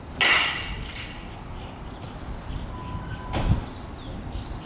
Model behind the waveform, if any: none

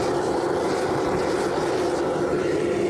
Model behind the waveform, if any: none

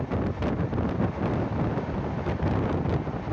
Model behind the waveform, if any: none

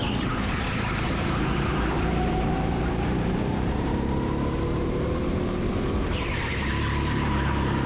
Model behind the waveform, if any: vocoder, BigVGAN v2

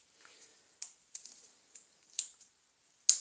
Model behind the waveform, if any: none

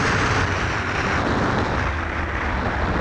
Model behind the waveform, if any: none